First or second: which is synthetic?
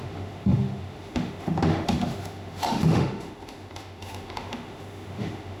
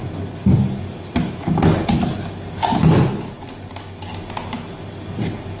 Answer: first